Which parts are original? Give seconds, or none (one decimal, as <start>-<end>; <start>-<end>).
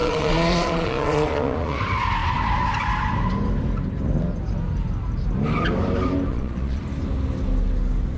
1.8-6.3; 6.8-8.2